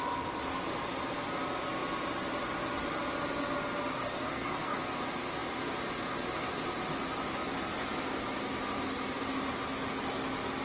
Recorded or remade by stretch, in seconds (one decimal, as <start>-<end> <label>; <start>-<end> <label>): 0.0-3.9 recorded; 3.9-4.8 remade; 4.8-10.6 recorded